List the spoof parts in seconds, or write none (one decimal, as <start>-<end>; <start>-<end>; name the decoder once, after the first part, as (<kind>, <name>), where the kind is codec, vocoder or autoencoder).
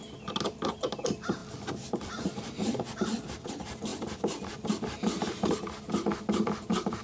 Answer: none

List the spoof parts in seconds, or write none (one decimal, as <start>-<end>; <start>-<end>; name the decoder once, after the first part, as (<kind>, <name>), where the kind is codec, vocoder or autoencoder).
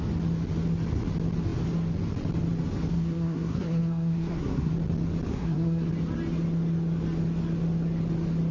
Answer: 2.9-4.7 (codec, SNAC); 5.3-5.9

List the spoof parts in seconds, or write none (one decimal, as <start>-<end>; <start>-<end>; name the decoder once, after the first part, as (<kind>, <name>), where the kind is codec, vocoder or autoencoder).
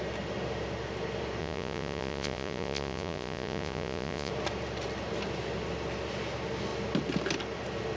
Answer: 1.4-4.3 (vocoder, Vocos)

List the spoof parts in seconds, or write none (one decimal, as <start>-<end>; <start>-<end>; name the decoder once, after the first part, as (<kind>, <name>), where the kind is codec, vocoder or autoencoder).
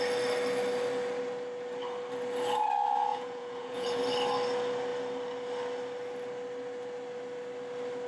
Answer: 3.1-4.0 (vocoder, Vocos)